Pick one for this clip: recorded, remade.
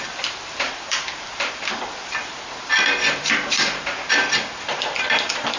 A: remade